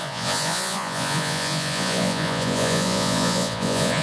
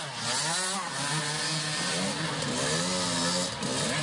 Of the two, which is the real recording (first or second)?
second